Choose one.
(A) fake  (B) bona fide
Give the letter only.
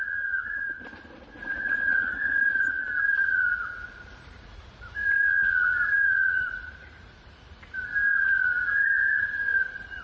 A